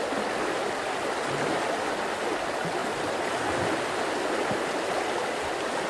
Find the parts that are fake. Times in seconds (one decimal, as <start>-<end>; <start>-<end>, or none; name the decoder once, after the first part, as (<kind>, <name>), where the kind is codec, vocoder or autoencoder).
none

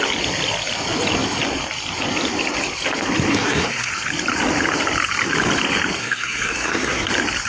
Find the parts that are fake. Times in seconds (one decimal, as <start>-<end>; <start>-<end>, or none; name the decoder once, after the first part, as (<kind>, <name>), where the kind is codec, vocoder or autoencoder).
3.3-3.9 (codec, SNAC); 6.0-7.1

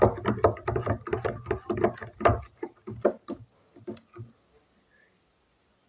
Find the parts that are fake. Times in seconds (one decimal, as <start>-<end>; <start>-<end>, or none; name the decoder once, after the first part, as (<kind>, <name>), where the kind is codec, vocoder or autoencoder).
none

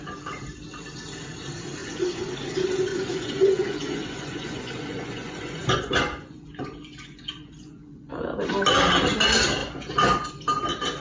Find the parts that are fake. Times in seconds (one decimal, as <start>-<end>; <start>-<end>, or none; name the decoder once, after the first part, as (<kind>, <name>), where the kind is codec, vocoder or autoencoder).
1.8-2.3 (vocoder, Vocos); 2.9-8.1; 9.6-10.3

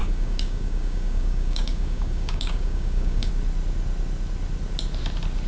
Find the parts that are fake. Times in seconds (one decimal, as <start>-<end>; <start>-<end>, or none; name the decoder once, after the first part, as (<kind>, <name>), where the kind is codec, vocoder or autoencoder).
0.0-3.3 (codec, DAC)

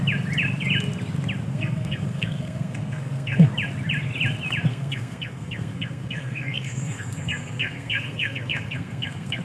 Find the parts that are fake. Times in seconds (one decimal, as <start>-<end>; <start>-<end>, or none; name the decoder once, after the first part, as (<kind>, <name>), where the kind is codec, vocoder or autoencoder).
1.5-3.5 (codec, SNAC); 4.7-9.4

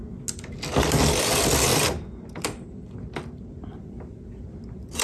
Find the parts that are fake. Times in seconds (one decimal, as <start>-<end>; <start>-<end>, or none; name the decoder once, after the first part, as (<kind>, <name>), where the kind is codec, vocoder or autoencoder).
none

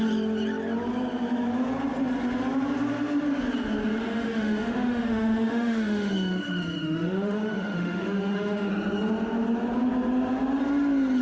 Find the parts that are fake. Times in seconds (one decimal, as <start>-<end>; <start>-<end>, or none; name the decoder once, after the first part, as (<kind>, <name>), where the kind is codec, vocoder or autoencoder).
4.1-8.7 (autoencoder, DAC-VAE)